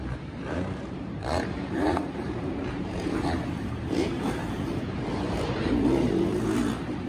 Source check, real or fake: fake